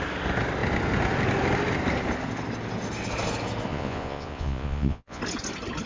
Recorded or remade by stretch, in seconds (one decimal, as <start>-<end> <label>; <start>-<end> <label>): 0.0-3.7 recorded; 3.7-5.2 remade; 5.2-5.9 recorded